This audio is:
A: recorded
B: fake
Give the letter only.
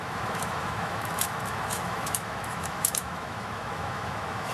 B